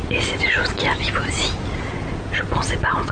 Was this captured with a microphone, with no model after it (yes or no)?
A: yes